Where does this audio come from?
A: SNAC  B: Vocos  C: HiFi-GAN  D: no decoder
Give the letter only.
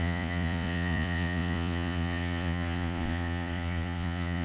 B